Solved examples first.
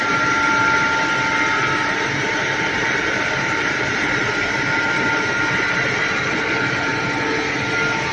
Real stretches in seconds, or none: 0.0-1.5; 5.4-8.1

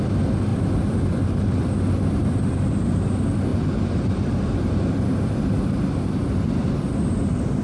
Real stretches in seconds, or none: 0.0-0.5; 1.7-2.2; 2.8-3.5; 5.4-7.6